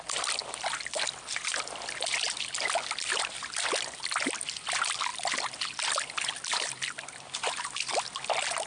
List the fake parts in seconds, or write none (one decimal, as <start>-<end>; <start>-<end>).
none